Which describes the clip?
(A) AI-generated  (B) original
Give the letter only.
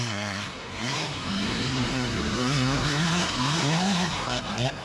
A